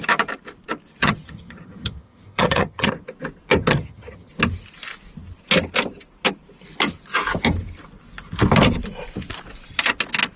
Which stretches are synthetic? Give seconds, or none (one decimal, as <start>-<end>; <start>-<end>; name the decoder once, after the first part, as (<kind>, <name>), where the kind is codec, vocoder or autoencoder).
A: 1.0-2.9 (vocoder, HiFi-GAN); 3.6-4.3